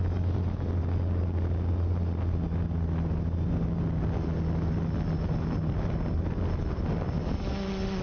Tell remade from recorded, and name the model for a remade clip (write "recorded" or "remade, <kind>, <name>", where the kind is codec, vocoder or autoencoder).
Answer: recorded